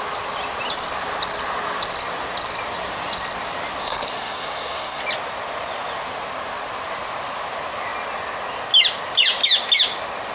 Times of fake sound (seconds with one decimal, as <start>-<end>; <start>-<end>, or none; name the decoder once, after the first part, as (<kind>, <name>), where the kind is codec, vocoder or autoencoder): 3.8-5.0 (codec, SNAC)